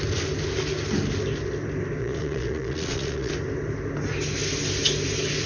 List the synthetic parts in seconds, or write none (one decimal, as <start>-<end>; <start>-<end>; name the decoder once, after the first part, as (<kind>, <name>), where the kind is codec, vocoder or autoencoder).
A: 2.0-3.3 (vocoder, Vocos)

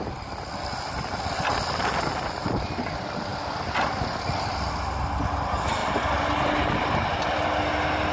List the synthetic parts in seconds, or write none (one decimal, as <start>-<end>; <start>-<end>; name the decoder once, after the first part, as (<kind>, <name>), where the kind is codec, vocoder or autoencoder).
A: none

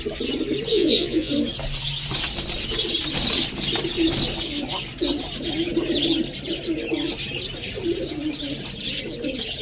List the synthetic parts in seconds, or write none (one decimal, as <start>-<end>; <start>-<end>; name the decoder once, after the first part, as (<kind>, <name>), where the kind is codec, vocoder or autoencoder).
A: 0.7-1.3 (vocoder, Vocos)